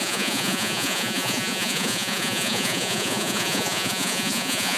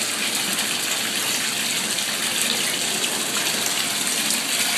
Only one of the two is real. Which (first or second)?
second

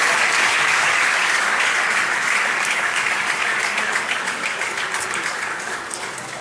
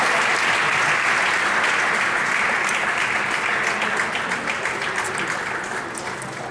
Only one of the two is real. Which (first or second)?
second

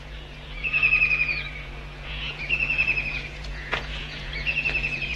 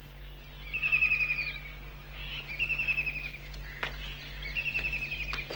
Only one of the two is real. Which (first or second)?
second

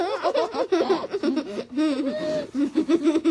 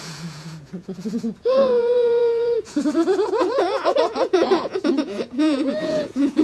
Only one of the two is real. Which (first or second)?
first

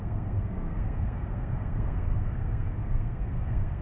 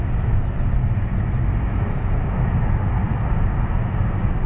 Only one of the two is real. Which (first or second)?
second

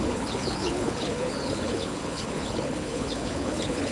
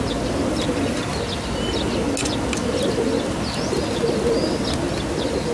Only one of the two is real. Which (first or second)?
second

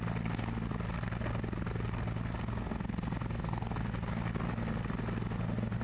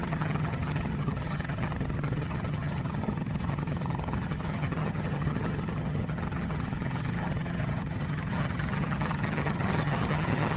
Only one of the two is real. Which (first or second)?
first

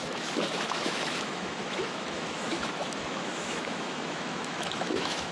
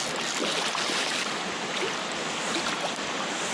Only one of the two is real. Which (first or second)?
second